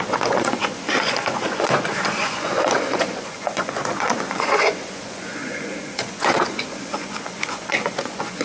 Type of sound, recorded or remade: remade